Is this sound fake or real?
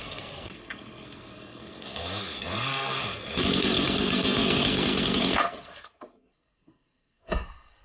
fake